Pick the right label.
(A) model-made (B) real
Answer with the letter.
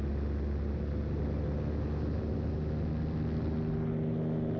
B